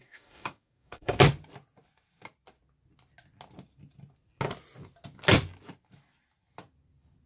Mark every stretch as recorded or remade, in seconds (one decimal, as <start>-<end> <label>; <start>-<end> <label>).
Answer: 0.0-1.2 remade; 1.2-7.3 recorded